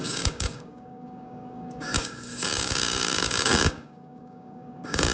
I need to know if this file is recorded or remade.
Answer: remade